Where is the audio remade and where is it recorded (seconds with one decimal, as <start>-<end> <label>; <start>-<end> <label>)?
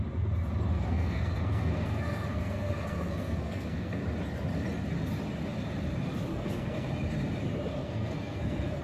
0.0-0.7 recorded; 0.7-4.0 remade; 4.0-6.3 recorded; 6.3-6.9 remade; 6.9-7.8 recorded; 7.8-8.8 remade